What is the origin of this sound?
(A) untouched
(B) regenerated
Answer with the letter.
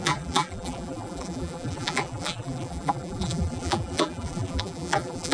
B